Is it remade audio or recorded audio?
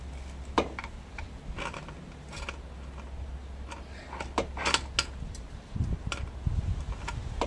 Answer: recorded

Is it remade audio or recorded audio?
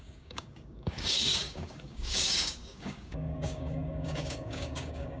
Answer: remade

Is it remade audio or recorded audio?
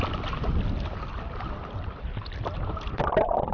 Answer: recorded